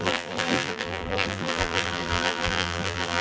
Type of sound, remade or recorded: remade